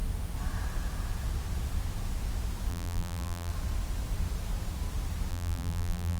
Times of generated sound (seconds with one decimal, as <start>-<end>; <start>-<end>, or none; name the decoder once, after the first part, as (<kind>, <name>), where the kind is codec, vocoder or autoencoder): 2.7-3.5 (vocoder, BigVGAN v2); 5.3-6.2

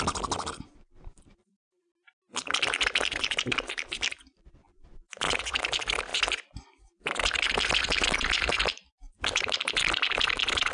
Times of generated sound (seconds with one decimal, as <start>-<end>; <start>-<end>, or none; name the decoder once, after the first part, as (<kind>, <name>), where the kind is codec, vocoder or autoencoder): 0.0-1.9 (vocoder, BigVGAN v2); 2.6-10.7

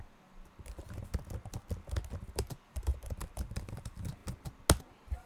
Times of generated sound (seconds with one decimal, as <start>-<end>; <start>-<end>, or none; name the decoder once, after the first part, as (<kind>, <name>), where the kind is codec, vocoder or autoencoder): 0.0-1.1 (vocoder, BigVGAN v2); 2.3-4.2; 4.8-5.3

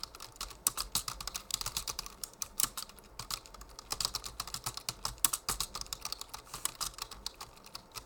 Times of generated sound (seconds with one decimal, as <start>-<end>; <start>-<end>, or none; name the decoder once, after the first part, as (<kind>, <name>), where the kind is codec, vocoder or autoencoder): 1.5-3.1 (vocoder, BigVGAN v2)

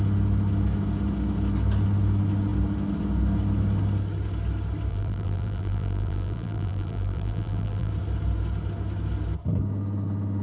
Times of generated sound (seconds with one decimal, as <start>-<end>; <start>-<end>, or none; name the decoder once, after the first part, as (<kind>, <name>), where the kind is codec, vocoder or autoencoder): 4.9-7.9 (vocoder, BigVGAN v2)